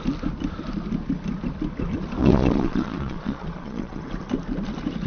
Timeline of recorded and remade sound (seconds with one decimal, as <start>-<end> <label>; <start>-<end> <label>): 0.0-2.2 recorded; 2.2-4.0 remade; 4.0-5.1 recorded